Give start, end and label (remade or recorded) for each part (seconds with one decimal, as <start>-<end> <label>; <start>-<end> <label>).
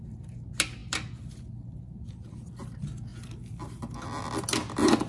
0.0-5.1 recorded